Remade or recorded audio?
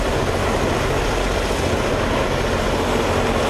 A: recorded